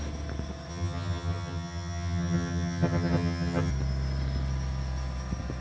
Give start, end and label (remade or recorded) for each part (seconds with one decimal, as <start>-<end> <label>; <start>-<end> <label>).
0.0-0.7 recorded; 0.7-3.7 remade; 3.7-5.6 recorded